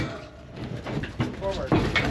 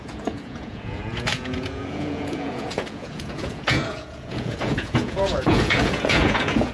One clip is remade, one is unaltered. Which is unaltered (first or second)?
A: first